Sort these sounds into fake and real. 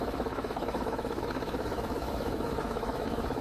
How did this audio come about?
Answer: fake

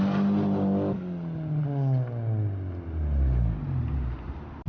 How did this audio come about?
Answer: real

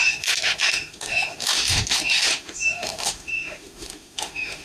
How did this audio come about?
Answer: fake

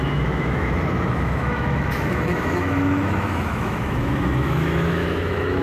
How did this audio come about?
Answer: fake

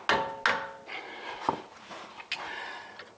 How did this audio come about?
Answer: real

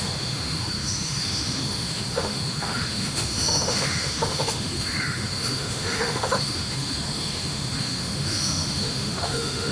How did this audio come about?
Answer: fake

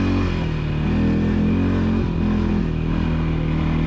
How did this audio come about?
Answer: real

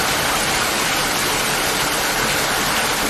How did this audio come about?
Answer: real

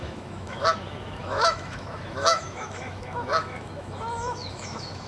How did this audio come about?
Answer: fake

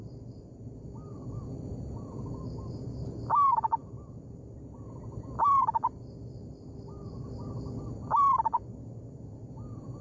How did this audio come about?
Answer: real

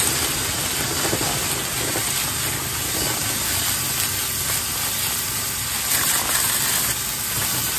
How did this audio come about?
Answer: real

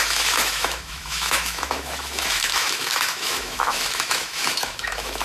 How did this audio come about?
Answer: fake